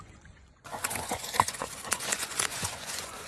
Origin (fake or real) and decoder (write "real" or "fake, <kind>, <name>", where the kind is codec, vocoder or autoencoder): fake, vocoder, Vocos